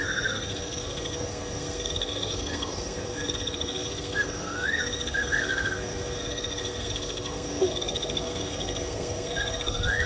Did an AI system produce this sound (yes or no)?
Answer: yes